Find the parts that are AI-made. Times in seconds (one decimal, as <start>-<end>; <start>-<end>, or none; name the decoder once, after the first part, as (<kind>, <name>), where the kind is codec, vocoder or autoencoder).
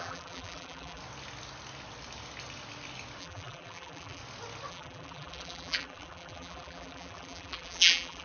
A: 0.0-1.0 (vocoder, BigVGAN v2); 3.2-4.2; 4.7-8.2